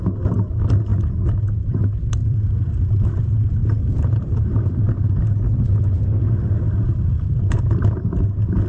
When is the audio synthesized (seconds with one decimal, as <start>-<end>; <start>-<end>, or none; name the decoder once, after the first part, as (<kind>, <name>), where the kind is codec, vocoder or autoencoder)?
2.2-3.1 (vocoder, BigVGAN v2); 3.6-7.6